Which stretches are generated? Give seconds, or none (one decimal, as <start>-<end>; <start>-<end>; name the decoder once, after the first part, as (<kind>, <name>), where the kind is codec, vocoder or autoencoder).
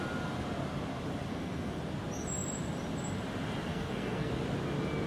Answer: 1.3-1.8 (codec, SNAC); 3.7-4.3